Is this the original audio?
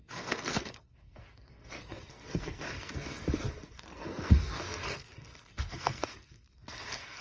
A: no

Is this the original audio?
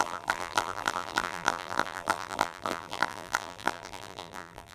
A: no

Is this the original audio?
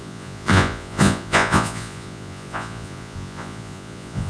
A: no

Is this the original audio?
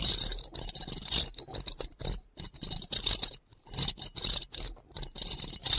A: yes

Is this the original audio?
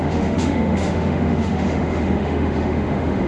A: no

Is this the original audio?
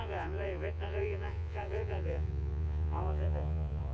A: no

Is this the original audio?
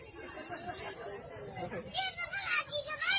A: yes